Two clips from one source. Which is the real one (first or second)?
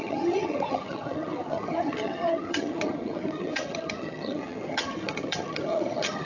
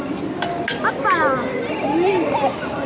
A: second